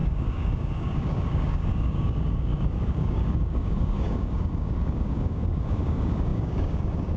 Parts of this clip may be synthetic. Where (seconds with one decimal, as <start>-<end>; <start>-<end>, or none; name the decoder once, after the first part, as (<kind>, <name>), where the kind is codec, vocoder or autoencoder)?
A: 0.0-7.2 (codec, DAC)